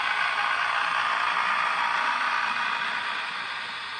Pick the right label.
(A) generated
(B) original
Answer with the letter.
B